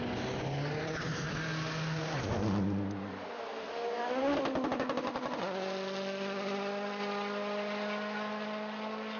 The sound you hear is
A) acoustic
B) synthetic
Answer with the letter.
A